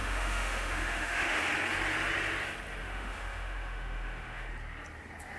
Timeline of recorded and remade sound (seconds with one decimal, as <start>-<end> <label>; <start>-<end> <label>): 0.0-1.4 remade; 1.4-2.8 recorded; 2.8-4.5 remade; 4.5-5.4 recorded